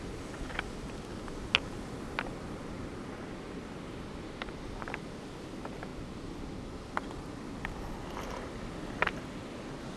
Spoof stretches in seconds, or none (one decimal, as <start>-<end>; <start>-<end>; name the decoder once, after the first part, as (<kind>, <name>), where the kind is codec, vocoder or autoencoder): none